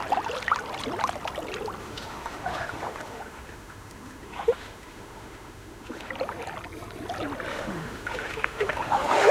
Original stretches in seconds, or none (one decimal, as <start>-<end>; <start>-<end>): 0.0-1.8; 6.1-7.5